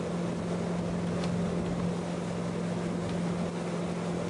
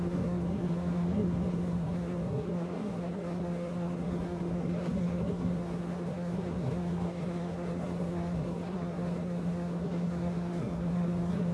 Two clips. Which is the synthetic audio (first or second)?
second